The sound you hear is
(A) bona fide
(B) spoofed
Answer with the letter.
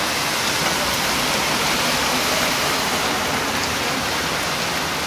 A